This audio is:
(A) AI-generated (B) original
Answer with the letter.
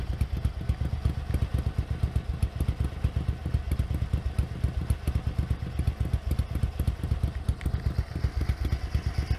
B